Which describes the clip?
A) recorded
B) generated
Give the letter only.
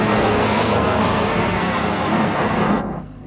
B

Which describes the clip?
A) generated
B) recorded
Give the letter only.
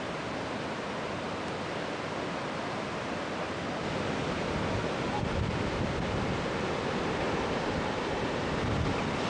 B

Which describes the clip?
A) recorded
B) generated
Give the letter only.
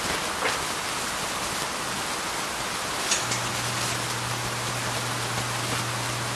A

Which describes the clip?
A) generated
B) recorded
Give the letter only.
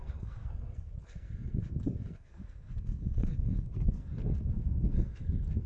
A